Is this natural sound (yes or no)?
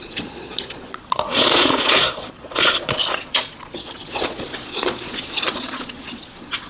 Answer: no